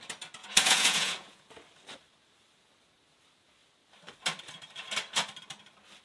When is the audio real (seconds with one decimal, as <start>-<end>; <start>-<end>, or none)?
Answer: 0.0-0.4; 1.5-6.0